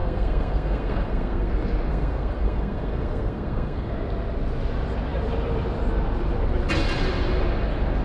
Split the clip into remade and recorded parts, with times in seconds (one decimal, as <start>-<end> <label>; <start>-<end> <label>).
0.0-1.5 remade; 1.5-1.9 recorded; 1.9-3.9 remade; 3.9-8.0 recorded